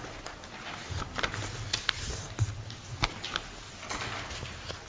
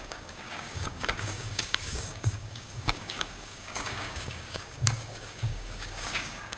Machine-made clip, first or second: second